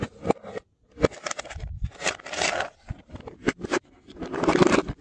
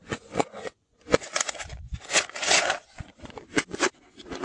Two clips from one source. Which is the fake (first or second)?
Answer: second